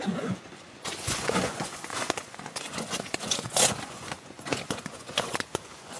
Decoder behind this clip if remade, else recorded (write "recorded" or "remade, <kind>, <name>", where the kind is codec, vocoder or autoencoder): remade, vocoder, Vocos